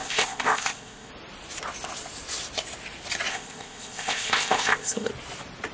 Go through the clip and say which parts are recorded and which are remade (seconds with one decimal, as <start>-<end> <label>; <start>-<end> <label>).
0.0-1.1 remade; 1.1-3.3 recorded; 3.3-5.1 remade; 5.1-5.7 recorded

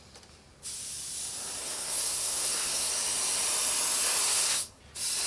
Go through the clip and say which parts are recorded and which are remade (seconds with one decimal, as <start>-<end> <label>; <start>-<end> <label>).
0.0-1.6 recorded; 1.6-2.9 remade; 2.9-4.2 recorded; 4.2-4.8 remade; 4.8-5.3 recorded

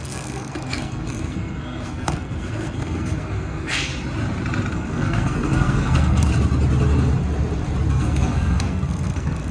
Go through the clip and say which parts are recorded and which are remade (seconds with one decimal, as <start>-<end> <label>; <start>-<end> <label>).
0.0-3.9 remade; 3.9-4.7 recorded; 4.7-6.3 remade; 6.3-7.9 recorded; 7.9-9.5 remade

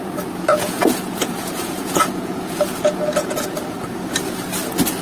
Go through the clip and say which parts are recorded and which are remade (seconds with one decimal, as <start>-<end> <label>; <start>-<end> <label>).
0.0-0.5 recorded; 0.5-3.5 remade; 3.5-5.0 recorded

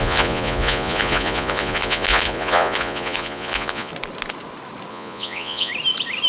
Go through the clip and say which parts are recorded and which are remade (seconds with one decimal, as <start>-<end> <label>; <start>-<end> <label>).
0.0-3.9 remade; 3.9-4.9 recorded; 4.9-5.7 remade; 5.7-6.3 recorded

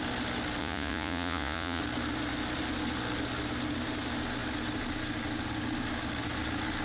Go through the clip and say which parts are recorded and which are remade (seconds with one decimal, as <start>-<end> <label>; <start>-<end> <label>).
0.0-0.6 recorded; 0.6-1.8 remade; 1.8-6.8 recorded

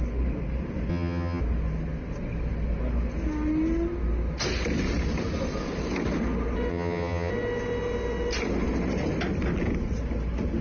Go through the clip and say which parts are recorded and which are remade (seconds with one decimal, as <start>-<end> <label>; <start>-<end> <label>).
0.0-0.9 recorded; 0.9-1.4 remade; 1.4-6.7 recorded; 6.7-7.3 remade; 7.3-10.6 recorded